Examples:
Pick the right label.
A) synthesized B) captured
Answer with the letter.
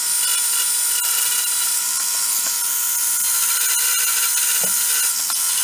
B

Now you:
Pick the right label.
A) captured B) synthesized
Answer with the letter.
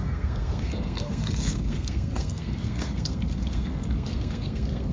B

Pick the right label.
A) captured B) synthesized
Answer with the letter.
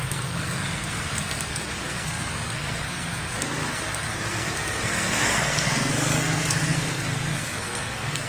B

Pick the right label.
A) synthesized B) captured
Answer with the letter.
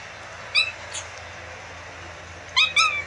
B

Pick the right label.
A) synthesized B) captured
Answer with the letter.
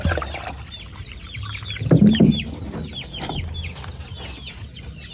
B